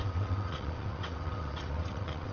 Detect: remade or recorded remade